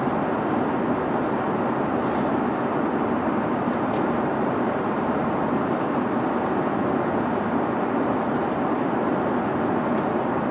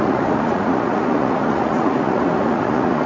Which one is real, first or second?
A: first